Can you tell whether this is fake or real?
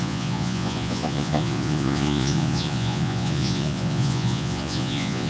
fake